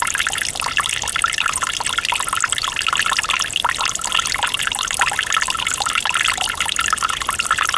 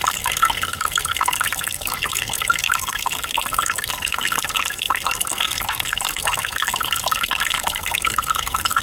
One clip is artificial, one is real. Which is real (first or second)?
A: first